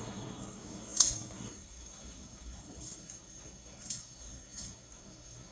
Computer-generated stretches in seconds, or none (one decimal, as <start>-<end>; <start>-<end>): 0.0-5.5